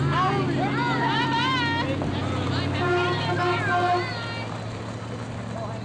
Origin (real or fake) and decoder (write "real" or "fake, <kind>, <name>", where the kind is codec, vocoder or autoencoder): real